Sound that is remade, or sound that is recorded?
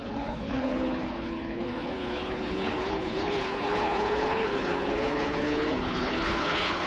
remade